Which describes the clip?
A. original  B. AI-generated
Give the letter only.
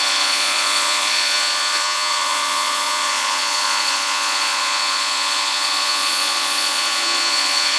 B